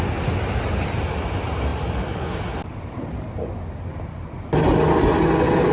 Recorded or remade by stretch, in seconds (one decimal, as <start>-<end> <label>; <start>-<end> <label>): 0.0-5.7 recorded